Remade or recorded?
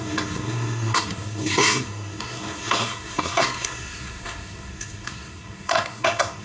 remade